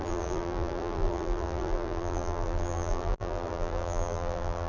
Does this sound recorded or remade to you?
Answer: remade